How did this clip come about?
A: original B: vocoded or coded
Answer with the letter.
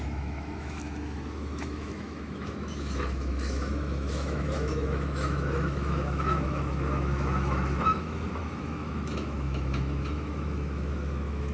B